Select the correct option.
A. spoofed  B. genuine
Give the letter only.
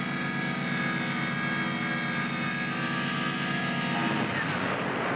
B